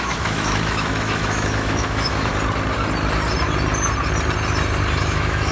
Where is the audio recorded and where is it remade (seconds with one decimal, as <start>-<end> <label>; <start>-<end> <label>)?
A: 0.0-2.3 remade; 2.3-5.0 recorded; 5.0-5.5 remade